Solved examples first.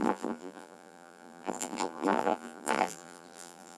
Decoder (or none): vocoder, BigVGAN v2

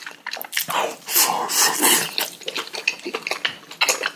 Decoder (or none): none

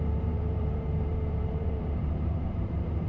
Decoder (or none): vocoder, BigVGAN v2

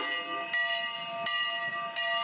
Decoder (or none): none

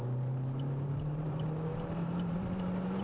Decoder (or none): vocoder, BigVGAN v2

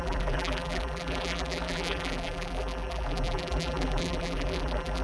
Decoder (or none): vocoder, BigVGAN v2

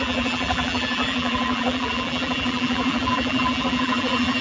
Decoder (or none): vocoder, BigVGAN v2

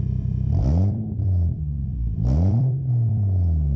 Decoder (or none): vocoder, BigVGAN v2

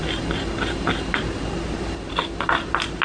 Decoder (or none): none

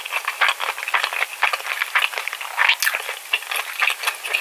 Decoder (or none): none